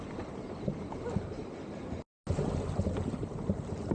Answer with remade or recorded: recorded